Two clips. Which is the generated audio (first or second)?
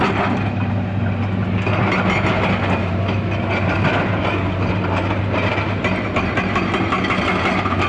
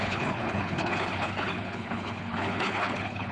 second